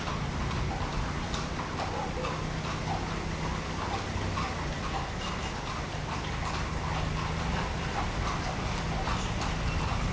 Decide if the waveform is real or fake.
real